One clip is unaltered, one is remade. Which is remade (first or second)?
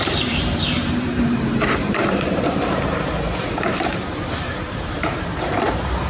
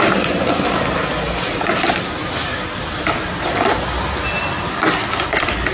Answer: first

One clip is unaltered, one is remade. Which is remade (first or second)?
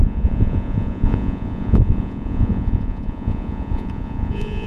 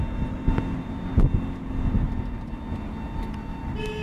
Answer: first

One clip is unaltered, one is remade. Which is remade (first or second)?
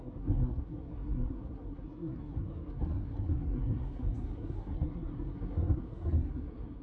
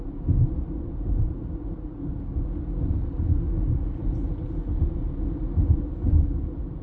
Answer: first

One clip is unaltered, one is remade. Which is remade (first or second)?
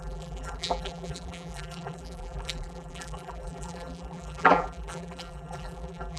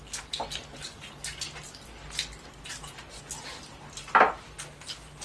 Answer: first